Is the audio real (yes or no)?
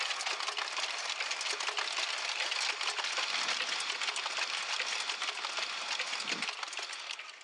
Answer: yes